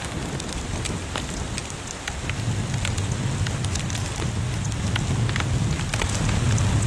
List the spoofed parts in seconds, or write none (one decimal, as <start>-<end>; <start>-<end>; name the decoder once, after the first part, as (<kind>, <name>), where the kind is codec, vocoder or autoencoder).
none